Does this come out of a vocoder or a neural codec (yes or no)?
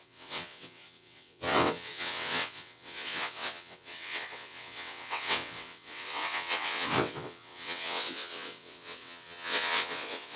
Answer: yes